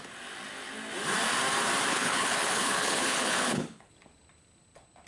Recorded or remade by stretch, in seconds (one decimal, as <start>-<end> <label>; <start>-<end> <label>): 0.0-1.9 recorded; 1.9-3.9 remade; 3.9-5.1 recorded